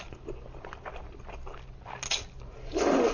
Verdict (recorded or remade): recorded